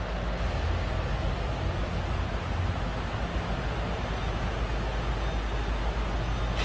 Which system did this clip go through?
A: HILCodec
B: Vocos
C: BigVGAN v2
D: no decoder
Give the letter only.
D